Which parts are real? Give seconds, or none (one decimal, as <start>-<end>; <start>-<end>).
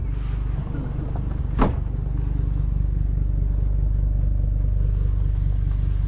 0.0-6.1